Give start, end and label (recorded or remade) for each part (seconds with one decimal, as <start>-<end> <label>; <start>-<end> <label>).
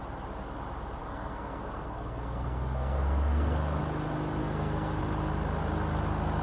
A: 0.0-1.0 recorded; 1.0-3.8 remade; 3.8-4.4 recorded; 4.4-5.0 remade; 5.0-6.4 recorded